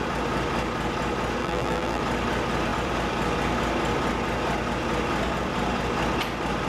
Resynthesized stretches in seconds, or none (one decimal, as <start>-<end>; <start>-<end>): 1.4-2.0